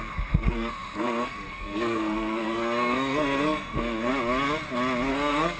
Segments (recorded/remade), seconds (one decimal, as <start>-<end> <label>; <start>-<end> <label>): 0.0-4.1 remade; 4.1-5.1 recorded; 5.1-5.6 remade

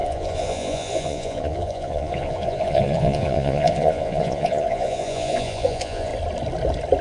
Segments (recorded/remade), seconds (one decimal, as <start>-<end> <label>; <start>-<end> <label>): 0.0-6.1 remade; 6.1-7.0 recorded

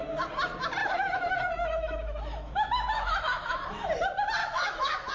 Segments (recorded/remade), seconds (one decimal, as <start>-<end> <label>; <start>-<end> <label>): 0.0-0.8 recorded; 0.8-3.9 remade; 3.9-4.4 recorded; 4.4-5.1 remade

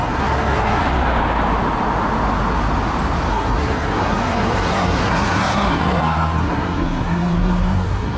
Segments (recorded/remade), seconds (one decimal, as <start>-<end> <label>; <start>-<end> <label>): 0.0-0.8 remade; 0.8-3.3 recorded; 3.3-8.2 remade

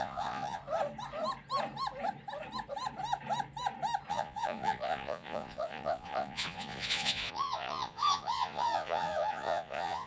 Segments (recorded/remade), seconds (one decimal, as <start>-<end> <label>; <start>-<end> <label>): 0.0-0.6 remade; 0.6-4.1 recorded; 4.1-10.1 remade

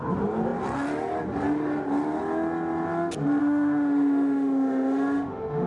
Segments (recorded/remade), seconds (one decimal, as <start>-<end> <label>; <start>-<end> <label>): 0.0-3.4 recorded; 3.4-5.7 remade

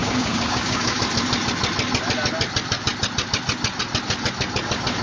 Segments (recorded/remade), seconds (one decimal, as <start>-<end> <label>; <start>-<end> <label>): 0.0-1.0 remade; 1.0-5.0 recorded

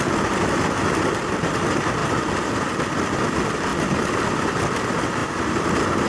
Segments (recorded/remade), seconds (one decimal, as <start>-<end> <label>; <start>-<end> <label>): 0.0-6.1 recorded